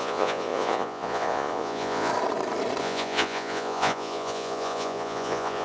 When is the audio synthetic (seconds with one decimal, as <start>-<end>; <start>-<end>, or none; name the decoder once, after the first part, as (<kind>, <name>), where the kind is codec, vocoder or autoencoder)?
0.0-2.1 (vocoder, Vocos); 2.8-5.6